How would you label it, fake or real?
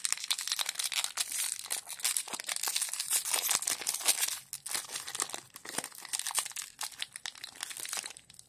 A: real